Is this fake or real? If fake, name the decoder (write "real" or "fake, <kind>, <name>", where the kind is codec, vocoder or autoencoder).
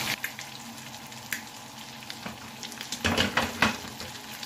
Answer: real